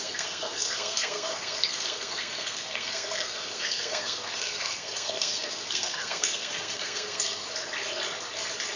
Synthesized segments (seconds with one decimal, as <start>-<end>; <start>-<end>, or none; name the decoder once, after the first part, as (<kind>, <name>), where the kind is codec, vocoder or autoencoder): 0.0-7.4 (codec, SNAC)